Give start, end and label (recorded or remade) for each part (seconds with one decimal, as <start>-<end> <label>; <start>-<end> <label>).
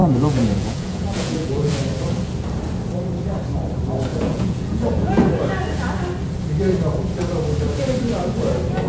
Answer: 0.0-1.7 remade; 1.7-4.1 recorded; 4.1-5.3 remade; 5.3-8.9 recorded